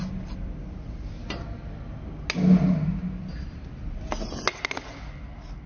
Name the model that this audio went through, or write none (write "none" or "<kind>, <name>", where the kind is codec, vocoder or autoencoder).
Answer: none